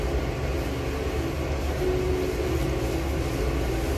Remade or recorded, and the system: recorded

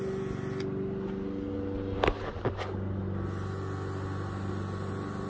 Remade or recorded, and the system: recorded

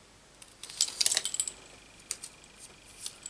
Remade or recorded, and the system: recorded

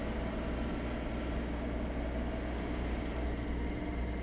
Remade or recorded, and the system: recorded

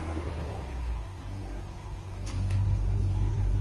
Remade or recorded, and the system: remade, codec, SNAC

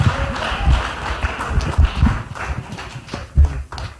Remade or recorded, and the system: recorded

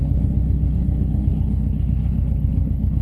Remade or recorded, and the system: remade, codec, HILCodec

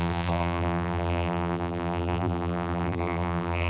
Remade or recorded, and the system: remade, vocoder, BigVGAN v2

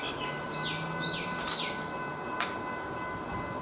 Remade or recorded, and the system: recorded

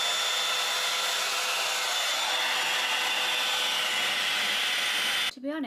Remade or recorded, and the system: recorded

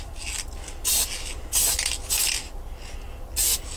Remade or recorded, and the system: recorded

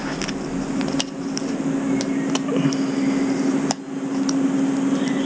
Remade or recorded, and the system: recorded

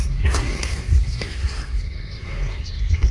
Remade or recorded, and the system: remade, codec, SNAC